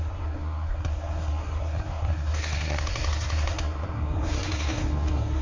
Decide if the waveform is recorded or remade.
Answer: remade